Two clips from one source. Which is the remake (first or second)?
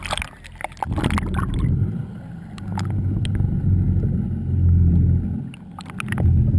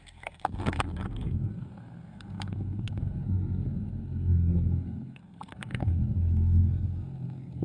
second